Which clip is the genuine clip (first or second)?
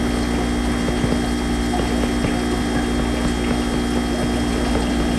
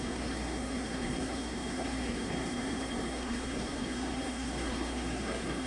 first